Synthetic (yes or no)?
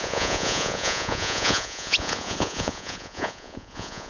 yes